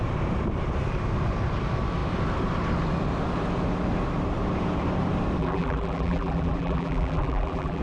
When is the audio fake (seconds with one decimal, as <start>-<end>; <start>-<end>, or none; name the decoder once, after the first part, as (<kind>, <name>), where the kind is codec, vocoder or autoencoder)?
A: 5.4-7.8 (vocoder, BigVGAN v2)